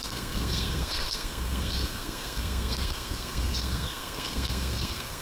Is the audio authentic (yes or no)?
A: no